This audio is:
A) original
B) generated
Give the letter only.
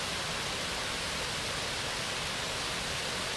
A